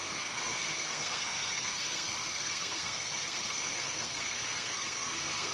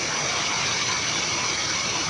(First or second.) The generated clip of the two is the first